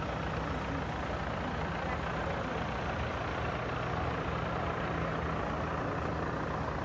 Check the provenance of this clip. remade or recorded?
recorded